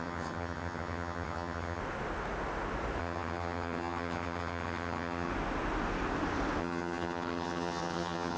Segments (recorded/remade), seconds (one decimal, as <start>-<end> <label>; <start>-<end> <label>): 0.0-1.8 remade; 1.8-3.0 recorded; 3.0-5.3 remade; 5.3-6.6 recorded; 6.6-8.4 remade